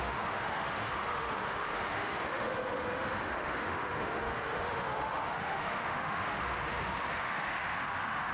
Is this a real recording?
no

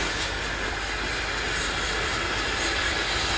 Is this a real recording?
yes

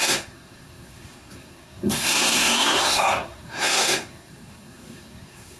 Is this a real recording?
no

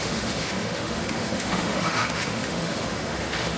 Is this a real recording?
no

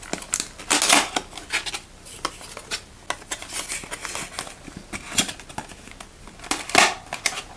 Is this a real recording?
yes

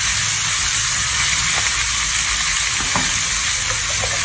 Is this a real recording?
yes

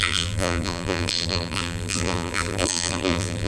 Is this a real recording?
no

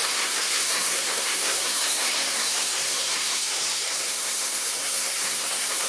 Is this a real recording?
no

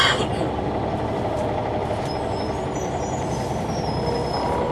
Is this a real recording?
yes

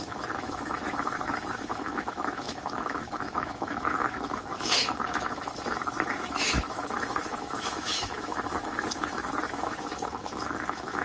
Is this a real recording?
no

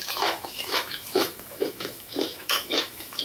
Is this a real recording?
no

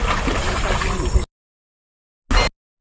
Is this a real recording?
yes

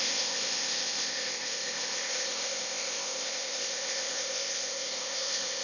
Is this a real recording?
no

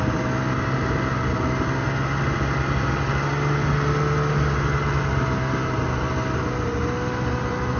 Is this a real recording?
yes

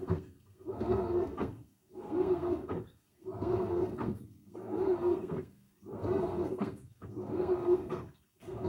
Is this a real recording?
no